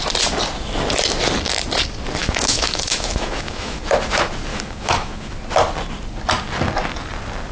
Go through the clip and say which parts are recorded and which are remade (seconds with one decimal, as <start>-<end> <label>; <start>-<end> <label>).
0.0-2.2 recorded; 2.2-3.8 remade; 3.8-4.5 recorded; 4.5-5.3 remade; 5.3-7.5 recorded